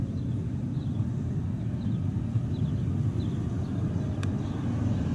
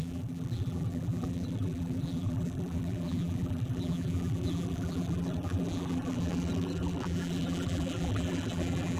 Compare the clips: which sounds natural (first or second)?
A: first